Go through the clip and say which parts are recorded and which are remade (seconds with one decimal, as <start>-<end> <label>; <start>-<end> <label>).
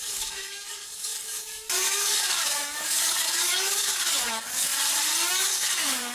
0.0-4.7 remade; 4.7-5.3 recorded; 5.3-6.1 remade